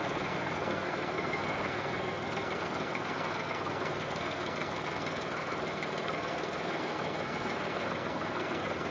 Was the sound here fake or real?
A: fake